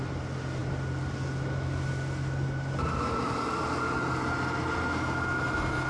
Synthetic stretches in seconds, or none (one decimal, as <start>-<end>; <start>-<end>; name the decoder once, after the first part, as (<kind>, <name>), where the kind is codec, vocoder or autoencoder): none